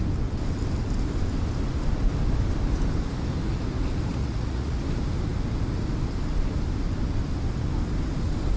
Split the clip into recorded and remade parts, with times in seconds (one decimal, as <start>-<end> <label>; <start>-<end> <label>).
0.0-4.2 recorded; 4.2-4.8 remade; 4.8-8.6 recorded